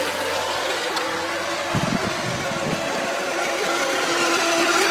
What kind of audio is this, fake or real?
real